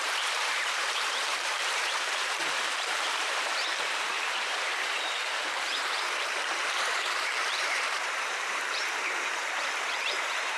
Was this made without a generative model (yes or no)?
no